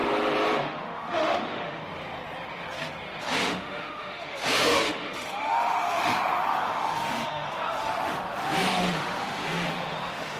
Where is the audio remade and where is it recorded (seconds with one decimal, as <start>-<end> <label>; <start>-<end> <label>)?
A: 0.0-0.6 recorded; 0.6-1.8 remade; 1.8-3.2 recorded; 3.2-10.4 remade